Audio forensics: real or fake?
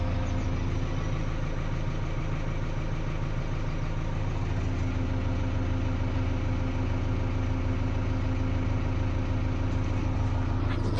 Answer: real